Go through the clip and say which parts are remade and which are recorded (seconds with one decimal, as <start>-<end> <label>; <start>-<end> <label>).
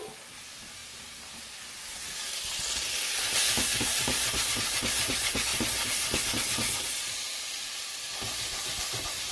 0.0-3.9 recorded; 3.9-5.1 remade; 5.1-9.3 recorded